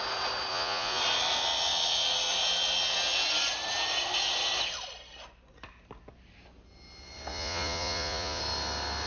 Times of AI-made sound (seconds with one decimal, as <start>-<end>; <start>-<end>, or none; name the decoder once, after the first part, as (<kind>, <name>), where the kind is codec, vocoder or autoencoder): 0.5-1.0 (vocoder, Vocos); 7.3-8.4